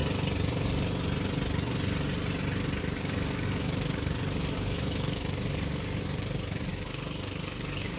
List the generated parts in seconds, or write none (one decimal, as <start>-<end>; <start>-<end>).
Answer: 2.8-8.0